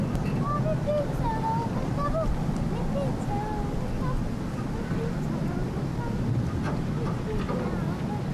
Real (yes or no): yes